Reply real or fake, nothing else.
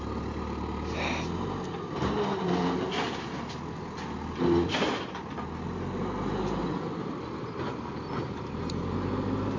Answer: real